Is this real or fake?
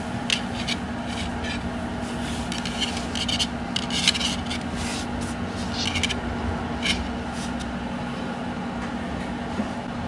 real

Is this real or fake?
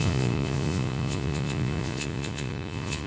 fake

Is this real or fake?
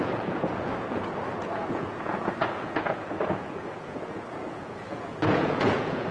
fake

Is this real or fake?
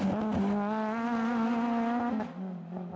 real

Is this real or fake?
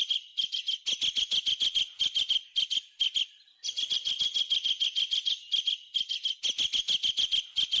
real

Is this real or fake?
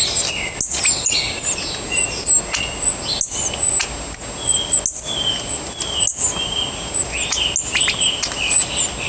real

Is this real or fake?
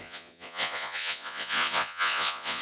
fake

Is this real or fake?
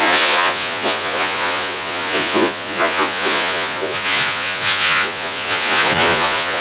fake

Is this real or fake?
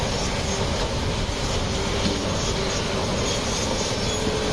real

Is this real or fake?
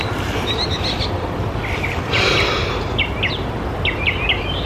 real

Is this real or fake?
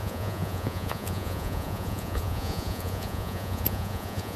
fake